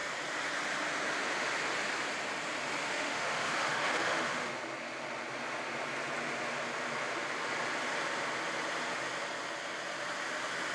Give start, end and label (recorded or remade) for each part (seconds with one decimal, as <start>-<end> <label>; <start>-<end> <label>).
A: 0.0-2.8 recorded; 2.8-4.5 remade; 4.5-10.7 recorded